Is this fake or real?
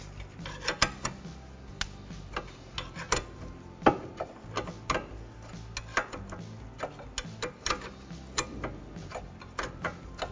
real